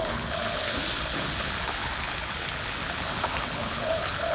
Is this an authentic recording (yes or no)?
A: no